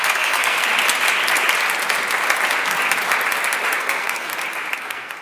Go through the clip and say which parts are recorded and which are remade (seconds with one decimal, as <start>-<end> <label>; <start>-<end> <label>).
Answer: 0.0-0.7 remade; 0.7-3.8 recorded; 3.8-4.3 remade; 4.3-4.8 recorded; 4.8-5.2 remade